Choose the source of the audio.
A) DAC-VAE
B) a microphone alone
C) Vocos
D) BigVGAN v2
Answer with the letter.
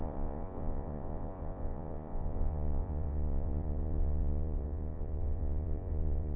C